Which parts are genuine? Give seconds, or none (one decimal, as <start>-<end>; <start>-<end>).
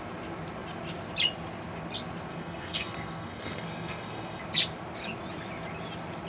0.0-2.3; 4.4-6.3